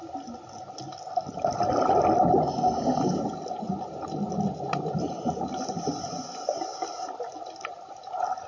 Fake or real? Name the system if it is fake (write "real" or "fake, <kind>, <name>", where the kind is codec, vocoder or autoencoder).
real